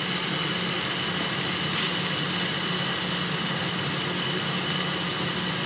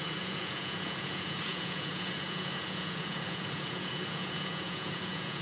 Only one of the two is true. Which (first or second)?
first